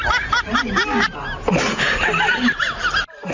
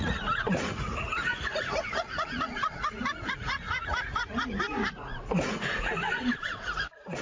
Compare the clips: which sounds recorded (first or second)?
first